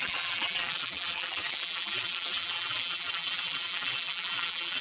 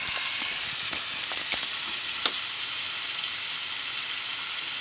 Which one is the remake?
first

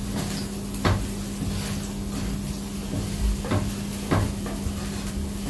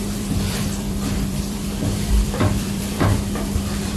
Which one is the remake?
second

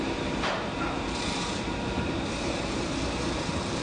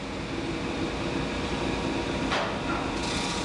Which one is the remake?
first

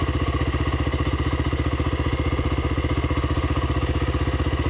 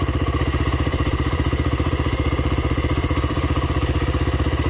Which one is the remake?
second